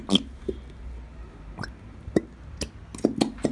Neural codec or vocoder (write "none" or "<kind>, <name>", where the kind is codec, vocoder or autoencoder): none